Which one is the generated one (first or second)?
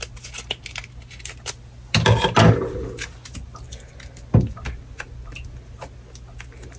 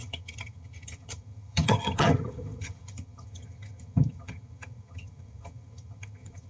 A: second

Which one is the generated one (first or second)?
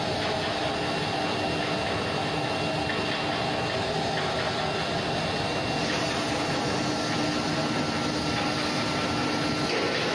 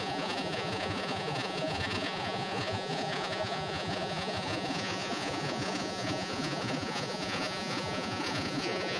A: second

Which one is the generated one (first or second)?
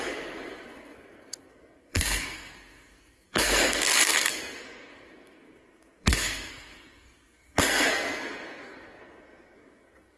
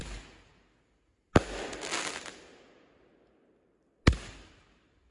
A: first